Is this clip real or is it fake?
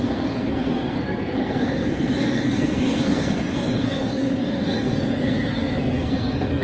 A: fake